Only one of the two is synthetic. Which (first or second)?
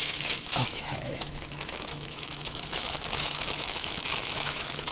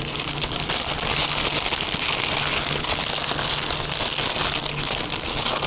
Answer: first